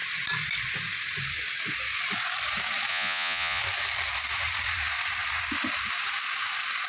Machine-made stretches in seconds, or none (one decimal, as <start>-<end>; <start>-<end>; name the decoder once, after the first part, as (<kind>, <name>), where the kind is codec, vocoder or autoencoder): 2.9-3.6 (vocoder, Vocos)